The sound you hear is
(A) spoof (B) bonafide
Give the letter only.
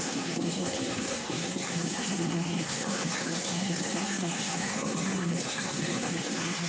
A